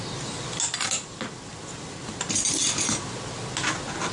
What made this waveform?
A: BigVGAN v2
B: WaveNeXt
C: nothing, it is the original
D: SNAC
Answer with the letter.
C